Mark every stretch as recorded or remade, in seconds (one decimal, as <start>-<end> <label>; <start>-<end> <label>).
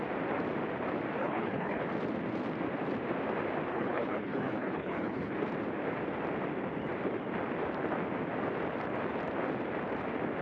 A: 0.0-1.2 recorded; 1.2-1.8 remade; 1.8-3.7 recorded; 3.7-5.3 remade; 5.3-10.4 recorded